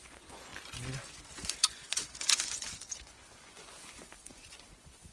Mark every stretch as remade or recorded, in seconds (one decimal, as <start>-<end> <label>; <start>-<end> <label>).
0.0-0.5 remade; 0.5-1.6 recorded; 1.6-5.1 remade